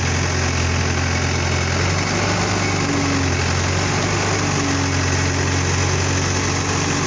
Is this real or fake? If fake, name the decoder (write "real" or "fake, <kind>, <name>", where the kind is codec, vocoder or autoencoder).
real